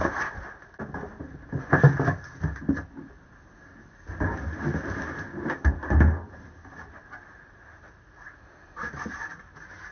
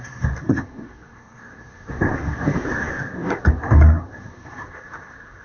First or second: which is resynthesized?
second